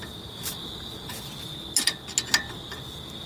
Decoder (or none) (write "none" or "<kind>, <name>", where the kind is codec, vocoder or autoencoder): none